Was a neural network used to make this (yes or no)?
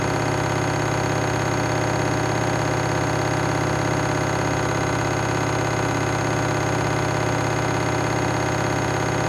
no